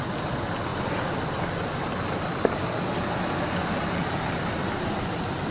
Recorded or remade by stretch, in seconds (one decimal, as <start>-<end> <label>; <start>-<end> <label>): 0.0-5.5 recorded